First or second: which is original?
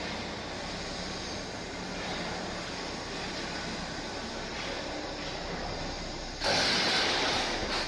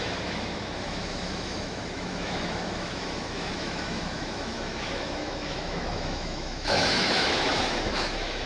first